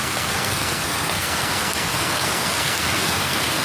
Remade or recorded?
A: remade